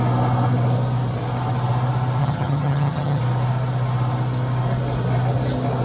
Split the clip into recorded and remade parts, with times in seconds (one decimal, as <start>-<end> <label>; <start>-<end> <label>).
0.0-2.2 recorded; 2.2-3.2 remade; 3.2-5.8 recorded